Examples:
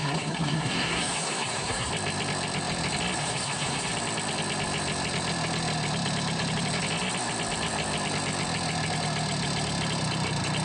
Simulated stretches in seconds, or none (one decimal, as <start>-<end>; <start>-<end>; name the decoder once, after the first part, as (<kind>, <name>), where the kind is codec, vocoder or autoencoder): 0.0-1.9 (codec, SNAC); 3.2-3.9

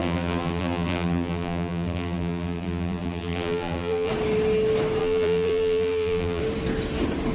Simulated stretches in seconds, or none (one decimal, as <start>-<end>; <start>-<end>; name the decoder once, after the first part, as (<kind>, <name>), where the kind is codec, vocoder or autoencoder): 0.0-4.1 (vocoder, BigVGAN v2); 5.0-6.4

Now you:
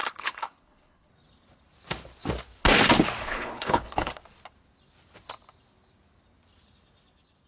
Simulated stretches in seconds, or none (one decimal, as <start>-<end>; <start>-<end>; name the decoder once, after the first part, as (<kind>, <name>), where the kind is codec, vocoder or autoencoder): 0.0-1.1 (codec, HILCodec); 3.2-4.2